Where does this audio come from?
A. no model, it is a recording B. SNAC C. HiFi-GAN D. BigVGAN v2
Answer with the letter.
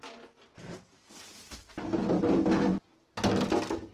A